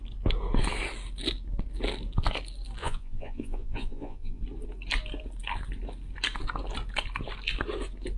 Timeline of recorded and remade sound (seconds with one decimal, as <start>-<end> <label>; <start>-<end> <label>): 0.0-2.8 recorded; 2.8-4.4 remade; 4.4-8.2 recorded